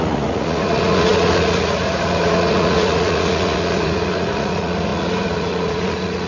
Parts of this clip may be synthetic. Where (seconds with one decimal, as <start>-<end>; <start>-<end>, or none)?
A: 0.0-6.3